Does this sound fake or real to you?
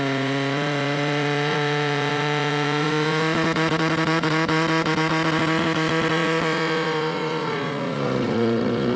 fake